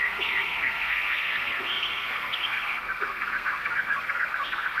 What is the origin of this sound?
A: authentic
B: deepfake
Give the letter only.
B